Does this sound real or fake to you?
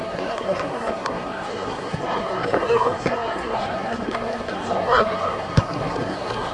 fake